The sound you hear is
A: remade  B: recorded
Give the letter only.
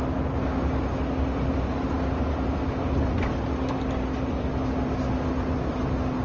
B